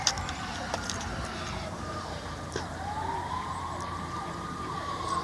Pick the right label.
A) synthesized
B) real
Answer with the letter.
A